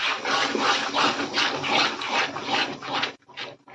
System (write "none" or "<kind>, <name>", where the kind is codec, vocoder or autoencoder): none